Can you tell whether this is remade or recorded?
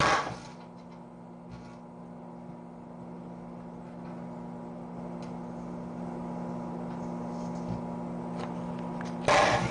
recorded